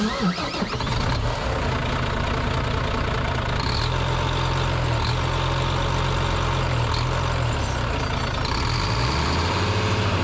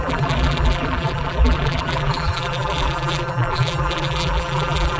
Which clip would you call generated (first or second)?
second